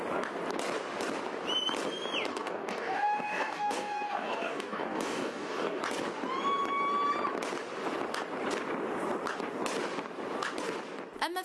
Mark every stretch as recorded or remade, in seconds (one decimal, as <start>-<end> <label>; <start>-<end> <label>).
0.0-2.3 recorded; 2.3-5.8 remade; 5.8-11.4 recorded